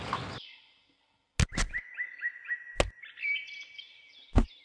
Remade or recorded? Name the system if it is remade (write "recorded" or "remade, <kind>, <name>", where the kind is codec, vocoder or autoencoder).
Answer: recorded